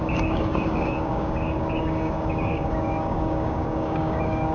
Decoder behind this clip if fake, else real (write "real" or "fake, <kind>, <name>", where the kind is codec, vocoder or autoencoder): fake, codec, DAC